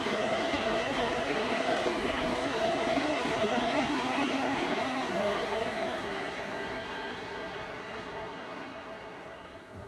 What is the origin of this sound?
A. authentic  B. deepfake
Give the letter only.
B